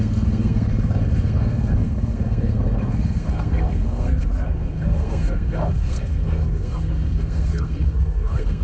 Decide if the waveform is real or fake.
fake